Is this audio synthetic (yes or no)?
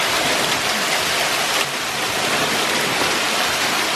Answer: no